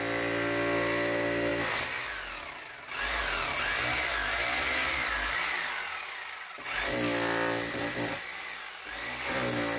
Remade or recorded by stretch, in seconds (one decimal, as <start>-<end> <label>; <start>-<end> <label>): 0.0-9.8 recorded